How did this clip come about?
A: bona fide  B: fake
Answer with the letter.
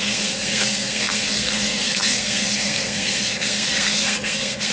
B